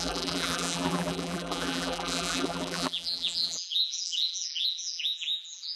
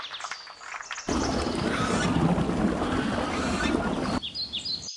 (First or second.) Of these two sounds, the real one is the second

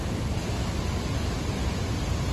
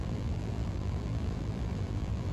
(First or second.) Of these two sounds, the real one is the first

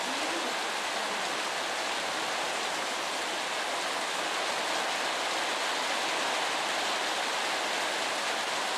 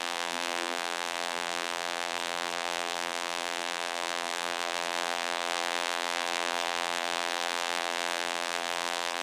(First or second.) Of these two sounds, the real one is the first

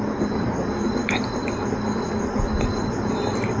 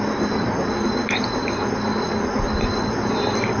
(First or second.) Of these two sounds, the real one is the second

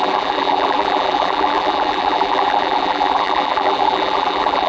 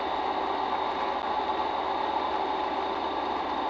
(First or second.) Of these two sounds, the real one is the second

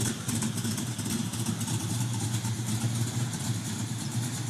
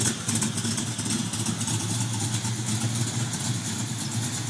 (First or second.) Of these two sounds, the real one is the second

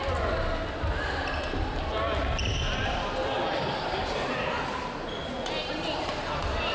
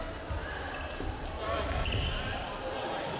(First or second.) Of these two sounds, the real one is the first